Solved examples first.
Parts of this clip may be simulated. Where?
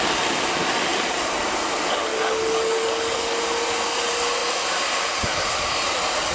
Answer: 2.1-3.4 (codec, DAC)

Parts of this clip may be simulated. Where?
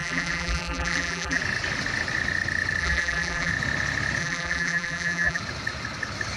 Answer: 0.0-1.4 (vocoder, BigVGAN v2); 2.8-3.5; 4.2-5.4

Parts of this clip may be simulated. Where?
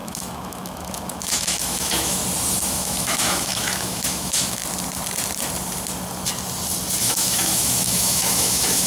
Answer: 0.0-2.2 (autoencoder, DAC-VAE); 2.7-4.6; 7.0-8.9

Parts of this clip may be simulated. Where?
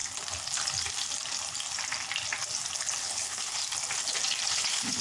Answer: 3.0-3.6 (codec, HILCodec); 4.5-5.0